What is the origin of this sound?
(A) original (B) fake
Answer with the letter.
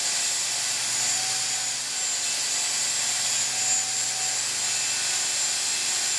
A